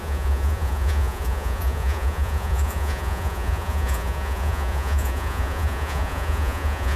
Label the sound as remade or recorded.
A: remade